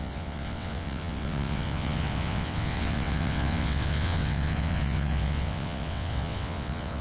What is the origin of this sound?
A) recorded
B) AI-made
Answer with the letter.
B